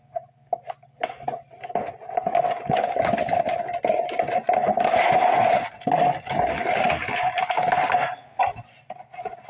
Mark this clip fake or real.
real